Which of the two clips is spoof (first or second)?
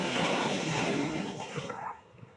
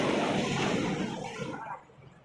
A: first